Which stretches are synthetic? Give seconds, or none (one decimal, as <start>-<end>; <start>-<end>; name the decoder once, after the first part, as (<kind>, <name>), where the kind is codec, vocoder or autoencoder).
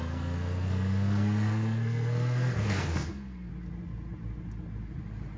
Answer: 0.0-3.5 (codec, SNAC)